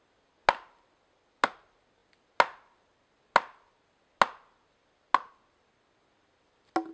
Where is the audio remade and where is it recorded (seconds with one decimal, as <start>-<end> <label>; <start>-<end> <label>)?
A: 0.0-6.9 recorded